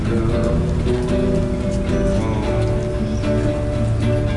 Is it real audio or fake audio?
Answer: real